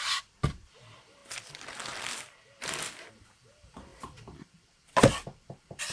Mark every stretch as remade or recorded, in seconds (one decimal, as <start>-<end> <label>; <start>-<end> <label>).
0.0-1.2 remade; 1.2-3.1 recorded; 3.1-5.9 remade